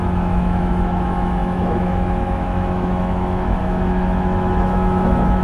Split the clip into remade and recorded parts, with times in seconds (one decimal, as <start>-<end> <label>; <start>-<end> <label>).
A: 0.0-5.4 remade